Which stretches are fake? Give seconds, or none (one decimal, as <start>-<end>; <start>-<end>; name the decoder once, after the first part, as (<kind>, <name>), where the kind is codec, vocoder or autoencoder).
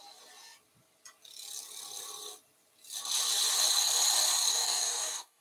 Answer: 4.5-5.4 (codec, DAC)